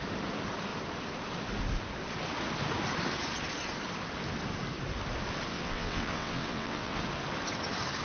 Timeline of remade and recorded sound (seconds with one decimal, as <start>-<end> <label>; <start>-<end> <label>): 0.0-5.5 recorded; 5.5-7.0 remade; 7.0-8.0 recorded